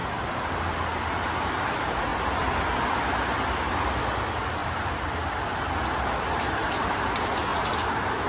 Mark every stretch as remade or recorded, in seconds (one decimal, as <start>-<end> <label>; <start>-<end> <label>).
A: 0.0-0.6 remade; 0.6-4.6 recorded; 4.6-5.2 remade; 5.2-8.3 recorded